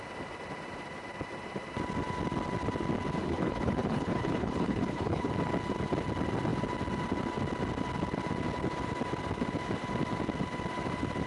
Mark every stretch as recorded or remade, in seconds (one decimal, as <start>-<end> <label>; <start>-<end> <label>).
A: 0.0-3.2 recorded; 3.2-5.3 remade; 5.3-11.3 recorded